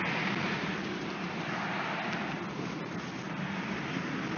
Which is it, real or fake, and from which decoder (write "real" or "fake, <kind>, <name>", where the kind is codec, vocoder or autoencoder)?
real